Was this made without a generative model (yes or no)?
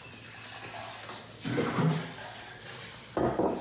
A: yes